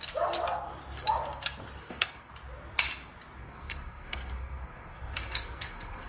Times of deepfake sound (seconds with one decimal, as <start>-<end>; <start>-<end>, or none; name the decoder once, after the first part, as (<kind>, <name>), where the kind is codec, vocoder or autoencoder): 1.8-2.3 (codec, SNAC); 3.4-6.1